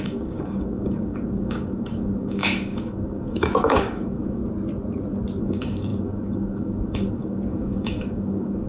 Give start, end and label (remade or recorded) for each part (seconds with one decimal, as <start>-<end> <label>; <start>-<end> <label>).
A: 0.0-4.4 remade; 4.4-5.4 recorded; 5.4-8.7 remade